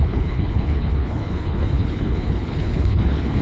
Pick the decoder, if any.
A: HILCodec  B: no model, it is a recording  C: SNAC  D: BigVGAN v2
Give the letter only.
A